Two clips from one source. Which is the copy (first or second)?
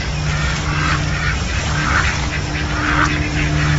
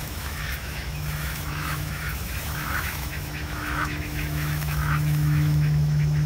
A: second